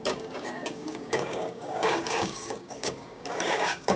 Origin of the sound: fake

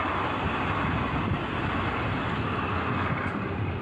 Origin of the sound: real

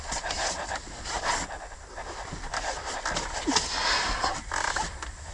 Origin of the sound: real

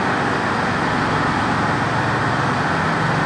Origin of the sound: real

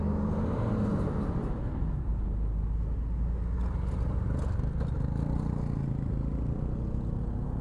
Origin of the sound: real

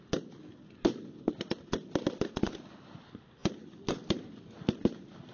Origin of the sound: real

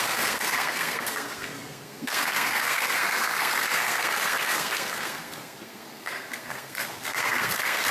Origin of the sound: fake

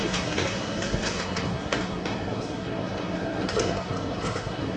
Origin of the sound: fake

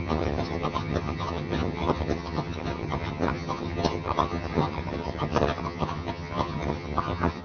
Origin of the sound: fake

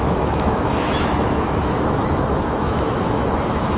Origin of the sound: fake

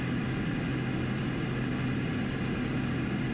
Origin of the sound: real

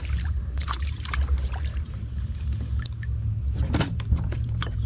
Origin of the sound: fake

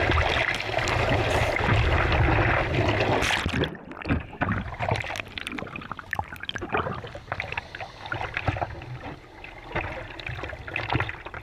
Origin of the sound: real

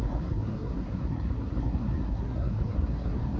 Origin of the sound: fake